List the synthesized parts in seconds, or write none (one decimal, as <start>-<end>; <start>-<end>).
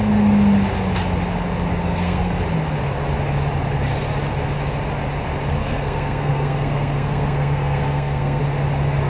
1.8-2.4; 5.6-8.4